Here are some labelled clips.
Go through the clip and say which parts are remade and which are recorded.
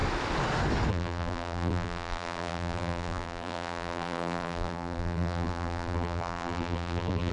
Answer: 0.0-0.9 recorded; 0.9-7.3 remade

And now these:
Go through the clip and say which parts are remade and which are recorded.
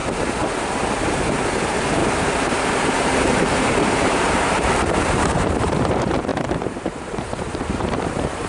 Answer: 0.0-8.5 remade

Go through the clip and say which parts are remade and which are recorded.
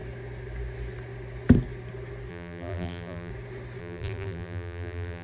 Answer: 0.0-2.3 recorded; 2.3-3.3 remade; 3.3-3.8 recorded; 3.8-5.2 remade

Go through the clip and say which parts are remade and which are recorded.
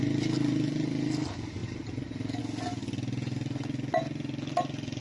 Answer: 0.0-1.6 recorded; 1.6-2.4 remade; 2.4-5.0 recorded